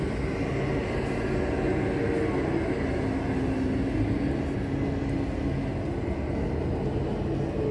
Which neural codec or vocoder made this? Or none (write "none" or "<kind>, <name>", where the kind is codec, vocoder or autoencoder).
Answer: none